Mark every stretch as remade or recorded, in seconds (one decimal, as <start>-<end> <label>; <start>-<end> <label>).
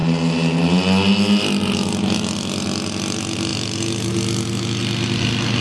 0.0-5.6 recorded